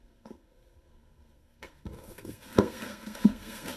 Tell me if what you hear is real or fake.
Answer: fake